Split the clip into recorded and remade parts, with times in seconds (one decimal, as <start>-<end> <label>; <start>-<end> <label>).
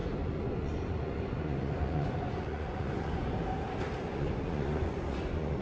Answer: 0.0-3.4 remade; 3.4-4.1 recorded; 4.1-5.6 remade